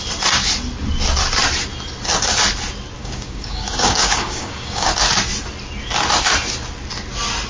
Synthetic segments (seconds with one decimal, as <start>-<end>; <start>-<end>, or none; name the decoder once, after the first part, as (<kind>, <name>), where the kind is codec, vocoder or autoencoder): 3.0-4.9 (codec, DAC)